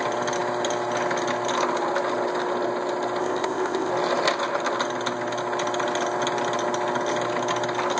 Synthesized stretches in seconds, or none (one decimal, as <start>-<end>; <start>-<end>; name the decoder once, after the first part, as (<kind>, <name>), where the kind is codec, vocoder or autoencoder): 3.2-3.9 (codec, ZipCodec)